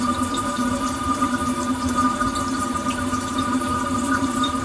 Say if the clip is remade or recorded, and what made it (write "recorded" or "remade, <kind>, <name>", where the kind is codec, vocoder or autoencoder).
remade, vocoder, BigVGAN v2